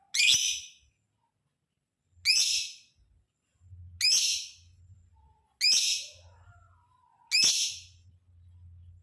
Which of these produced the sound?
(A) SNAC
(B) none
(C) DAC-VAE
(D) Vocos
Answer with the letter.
B